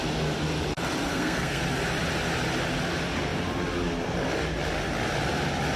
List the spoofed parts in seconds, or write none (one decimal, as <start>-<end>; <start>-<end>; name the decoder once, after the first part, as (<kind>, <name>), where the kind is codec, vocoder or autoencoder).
1.1-1.6 (codec, SNAC)